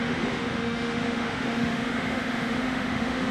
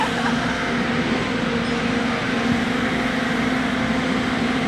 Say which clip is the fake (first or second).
first